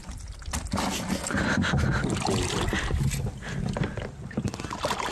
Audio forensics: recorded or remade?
recorded